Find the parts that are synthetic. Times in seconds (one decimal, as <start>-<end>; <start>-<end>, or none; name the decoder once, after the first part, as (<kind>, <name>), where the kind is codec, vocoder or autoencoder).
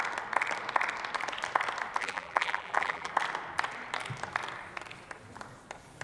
2.0-3.1 (vocoder, BigVGAN v2)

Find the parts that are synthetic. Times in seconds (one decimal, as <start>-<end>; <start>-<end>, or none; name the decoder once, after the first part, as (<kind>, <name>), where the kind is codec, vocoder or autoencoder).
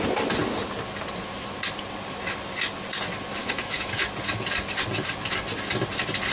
3.4-3.9 (autoencoder, DAC-VAE)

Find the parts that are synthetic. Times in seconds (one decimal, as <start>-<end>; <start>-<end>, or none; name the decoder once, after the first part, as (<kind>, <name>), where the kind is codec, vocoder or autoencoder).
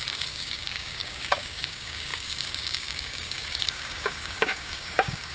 0.0-5.3 (codec, DAC)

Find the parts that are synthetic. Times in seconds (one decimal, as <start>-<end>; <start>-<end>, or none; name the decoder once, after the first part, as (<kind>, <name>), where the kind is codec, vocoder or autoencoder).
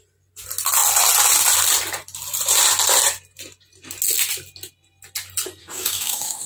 5.6-6.5 (codec, DAC)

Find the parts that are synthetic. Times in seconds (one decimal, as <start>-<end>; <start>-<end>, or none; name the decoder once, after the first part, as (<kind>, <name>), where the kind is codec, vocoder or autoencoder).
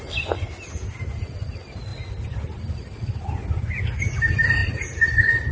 1.9-3.4 (vocoder, BigVGAN v2); 4.6-5.5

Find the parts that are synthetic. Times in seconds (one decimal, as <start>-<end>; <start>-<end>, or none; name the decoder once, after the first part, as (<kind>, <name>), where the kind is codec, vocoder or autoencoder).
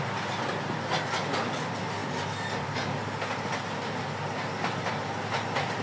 none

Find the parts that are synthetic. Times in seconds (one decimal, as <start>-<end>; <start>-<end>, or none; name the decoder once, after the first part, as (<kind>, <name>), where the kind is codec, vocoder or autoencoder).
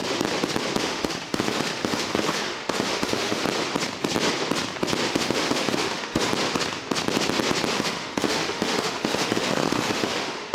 0.8-3.4 (autoencoder, DAC-VAE); 5.1-6.3; 7.7-10.5